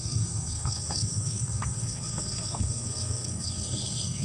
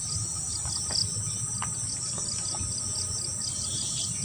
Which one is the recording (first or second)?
second